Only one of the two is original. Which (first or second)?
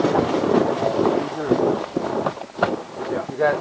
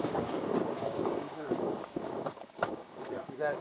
first